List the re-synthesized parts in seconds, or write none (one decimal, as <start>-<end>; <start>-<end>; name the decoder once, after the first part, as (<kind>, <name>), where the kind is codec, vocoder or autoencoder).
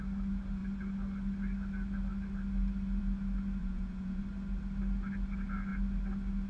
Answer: 3.6-4.2 (vocoder, Vocos)